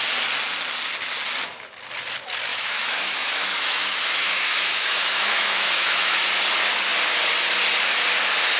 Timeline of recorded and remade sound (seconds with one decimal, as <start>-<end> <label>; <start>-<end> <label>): 0.0-2.5 recorded; 2.5-6.2 remade; 6.2-8.6 recorded